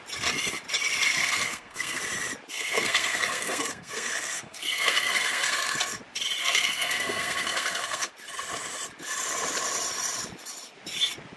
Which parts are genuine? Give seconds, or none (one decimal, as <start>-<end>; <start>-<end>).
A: 0.0-1.1; 2.0-2.5; 6.0-6.4; 8.1-11.4